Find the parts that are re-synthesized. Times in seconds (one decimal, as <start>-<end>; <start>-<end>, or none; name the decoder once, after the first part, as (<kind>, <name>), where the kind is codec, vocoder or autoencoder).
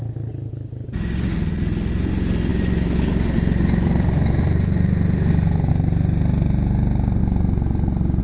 2.5-5.7 (vocoder, BigVGAN v2); 7.2-8.2